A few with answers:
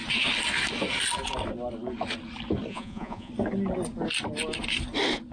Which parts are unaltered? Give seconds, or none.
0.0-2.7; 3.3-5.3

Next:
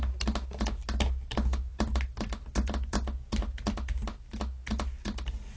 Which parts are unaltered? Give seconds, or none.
0.0-5.6

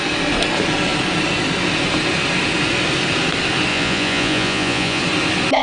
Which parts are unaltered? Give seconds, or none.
0.0-3.7; 5.0-5.6

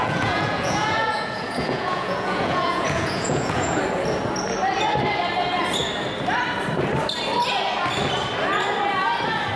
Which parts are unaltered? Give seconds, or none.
3.8-9.6

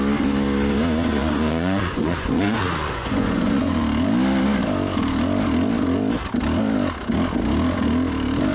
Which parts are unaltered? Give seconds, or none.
0.0-1.1; 3.8-8.5

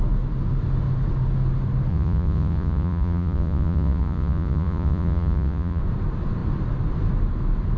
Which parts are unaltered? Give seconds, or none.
0.0-1.9; 5.8-7.8